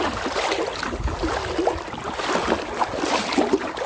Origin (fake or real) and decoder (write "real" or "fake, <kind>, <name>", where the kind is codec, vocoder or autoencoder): real